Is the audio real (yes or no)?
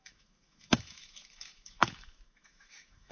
no